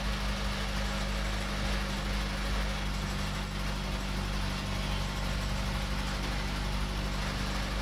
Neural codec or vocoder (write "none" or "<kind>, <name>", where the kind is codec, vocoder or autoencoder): none